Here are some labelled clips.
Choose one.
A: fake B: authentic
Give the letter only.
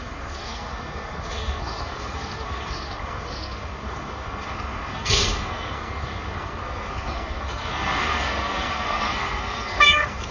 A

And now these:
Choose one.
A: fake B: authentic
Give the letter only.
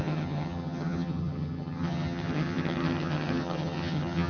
A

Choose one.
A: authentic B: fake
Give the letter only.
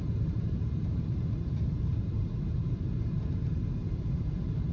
B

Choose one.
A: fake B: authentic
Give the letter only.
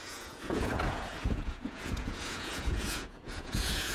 A